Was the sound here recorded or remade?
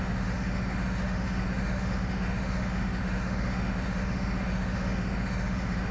remade